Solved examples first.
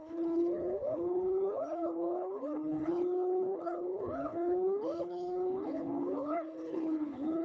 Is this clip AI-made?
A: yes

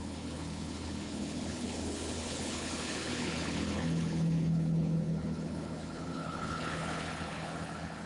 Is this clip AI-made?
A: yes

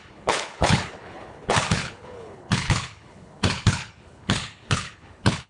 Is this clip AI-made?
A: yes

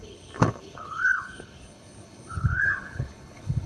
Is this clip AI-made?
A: yes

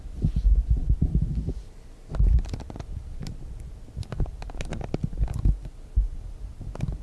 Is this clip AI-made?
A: no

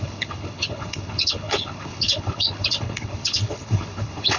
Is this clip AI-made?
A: yes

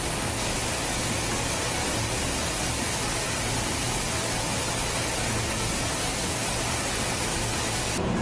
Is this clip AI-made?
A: no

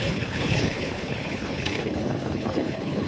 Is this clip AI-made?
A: yes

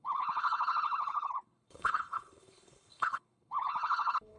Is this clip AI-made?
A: yes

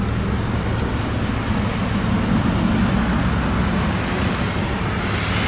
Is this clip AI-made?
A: no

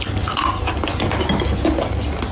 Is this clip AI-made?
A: no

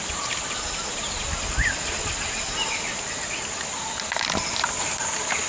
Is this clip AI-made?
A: no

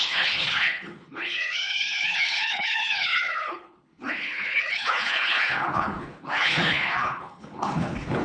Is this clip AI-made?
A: yes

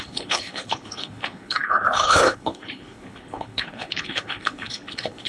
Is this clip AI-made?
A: yes